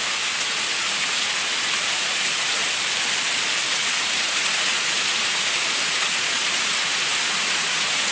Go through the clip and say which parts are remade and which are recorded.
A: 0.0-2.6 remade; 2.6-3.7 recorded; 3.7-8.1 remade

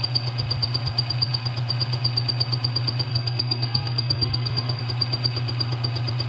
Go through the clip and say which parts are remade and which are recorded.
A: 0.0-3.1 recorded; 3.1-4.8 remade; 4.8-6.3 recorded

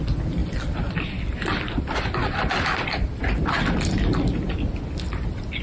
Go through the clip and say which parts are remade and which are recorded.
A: 0.0-0.4 recorded; 0.4-3.5 remade; 3.5-5.6 recorded

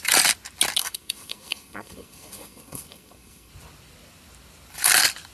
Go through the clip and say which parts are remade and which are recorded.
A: 0.0-0.8 recorded; 0.8-3.5 remade; 3.5-5.3 recorded

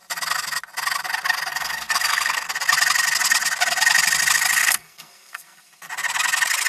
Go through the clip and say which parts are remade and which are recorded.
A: 0.0-1.5 recorded; 1.5-2.5 remade; 2.5-4.6 recorded; 4.6-5.9 remade; 5.9-6.7 recorded

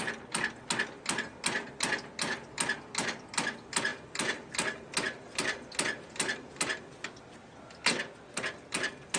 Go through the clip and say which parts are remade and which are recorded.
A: 0.0-9.2 recorded